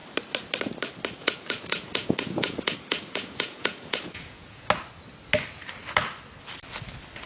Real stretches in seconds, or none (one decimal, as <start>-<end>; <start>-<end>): 0.0-1.2; 4.7-7.3